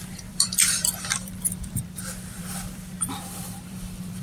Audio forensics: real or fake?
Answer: fake